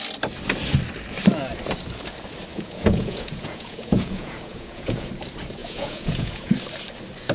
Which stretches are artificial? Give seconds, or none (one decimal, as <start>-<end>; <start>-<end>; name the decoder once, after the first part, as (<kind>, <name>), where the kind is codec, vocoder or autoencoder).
2.5-5.1 (vocoder, Vocos); 5.6-6.5

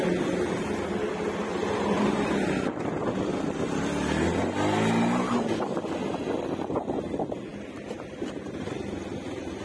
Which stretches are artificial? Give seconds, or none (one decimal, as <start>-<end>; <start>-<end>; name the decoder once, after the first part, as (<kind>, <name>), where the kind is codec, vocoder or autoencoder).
none

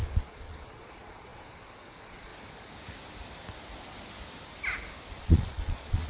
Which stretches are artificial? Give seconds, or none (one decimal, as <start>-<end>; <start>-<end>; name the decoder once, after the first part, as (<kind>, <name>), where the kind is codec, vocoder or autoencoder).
0.0-2.3 (vocoder, Vocos); 5.2-6.1